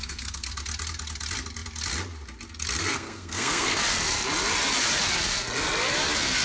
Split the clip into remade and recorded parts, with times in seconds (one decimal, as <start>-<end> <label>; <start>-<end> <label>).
0.0-0.5 remade; 0.5-2.8 recorded; 2.8-3.8 remade; 3.8-6.4 recorded